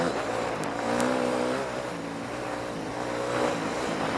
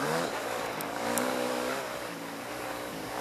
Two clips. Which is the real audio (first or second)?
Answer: first